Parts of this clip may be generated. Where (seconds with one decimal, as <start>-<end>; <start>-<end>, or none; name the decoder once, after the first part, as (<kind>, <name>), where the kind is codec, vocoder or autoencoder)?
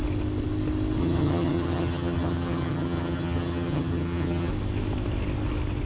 1.0-4.5 (vocoder, HiFi-GAN)